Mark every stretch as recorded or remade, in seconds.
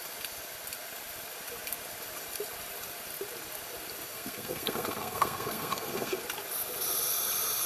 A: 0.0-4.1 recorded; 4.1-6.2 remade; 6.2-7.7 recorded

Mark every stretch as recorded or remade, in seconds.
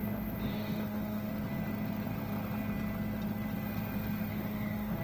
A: 0.0-0.5 recorded; 0.5-1.3 remade; 1.3-4.3 recorded; 4.3-5.0 remade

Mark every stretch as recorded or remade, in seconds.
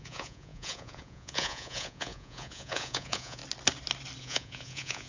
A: 0.0-3.4 remade; 3.4-4.2 recorded; 4.2-5.1 remade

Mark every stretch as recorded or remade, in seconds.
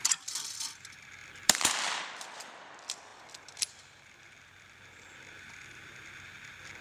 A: 0.0-1.2 recorded; 1.2-2.0 remade; 2.0-6.8 recorded